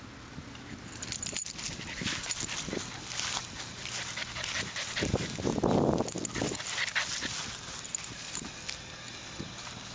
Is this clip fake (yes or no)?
no